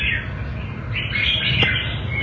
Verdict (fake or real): real